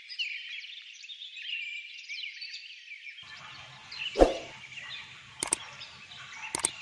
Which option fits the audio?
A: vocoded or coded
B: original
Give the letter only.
B